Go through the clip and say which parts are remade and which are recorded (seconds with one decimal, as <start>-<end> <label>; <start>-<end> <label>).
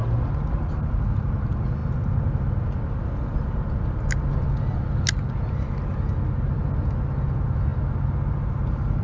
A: 0.0-9.0 recorded